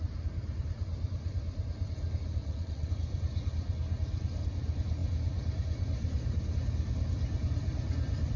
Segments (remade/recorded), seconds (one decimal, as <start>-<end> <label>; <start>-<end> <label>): 0.0-2.4 recorded; 2.4-2.9 remade; 2.9-8.4 recorded